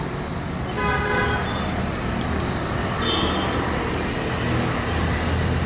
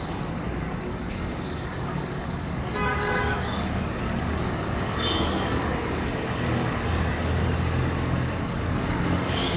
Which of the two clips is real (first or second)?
first